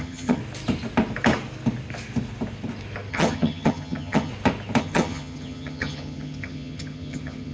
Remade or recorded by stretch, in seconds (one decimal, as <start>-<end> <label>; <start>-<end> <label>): 0.0-0.4 remade; 0.4-3.1 recorded; 3.1-4.3 remade; 4.3-4.8 recorded; 4.8-7.5 remade